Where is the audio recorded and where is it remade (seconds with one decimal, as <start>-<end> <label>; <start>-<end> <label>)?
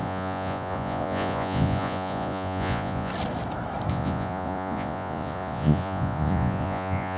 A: 0.0-3.1 remade; 3.1-3.9 recorded; 3.9-7.2 remade